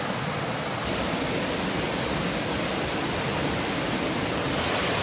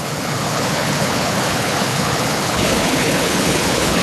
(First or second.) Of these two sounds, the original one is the first